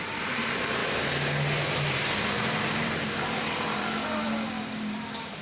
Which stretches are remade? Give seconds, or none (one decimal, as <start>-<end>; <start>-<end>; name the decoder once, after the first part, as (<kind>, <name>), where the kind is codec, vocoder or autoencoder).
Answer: 0.0-0.8 (vocoder, BigVGAN v2); 2.2-5.4